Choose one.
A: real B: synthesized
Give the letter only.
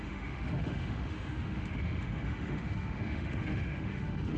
B